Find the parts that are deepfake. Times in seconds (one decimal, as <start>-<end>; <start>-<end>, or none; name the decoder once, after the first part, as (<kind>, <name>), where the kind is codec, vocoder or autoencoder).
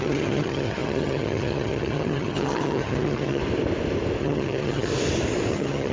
0.0-3.4 (vocoder, HiFi-GAN); 4.2-4.9; 5.5-5.9